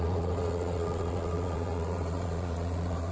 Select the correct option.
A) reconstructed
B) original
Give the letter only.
A